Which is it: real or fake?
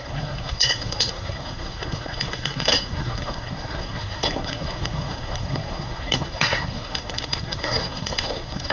fake